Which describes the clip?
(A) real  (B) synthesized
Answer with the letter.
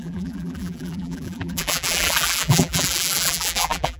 B